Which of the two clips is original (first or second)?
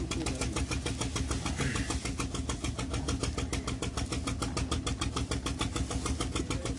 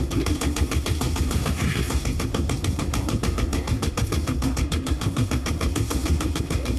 first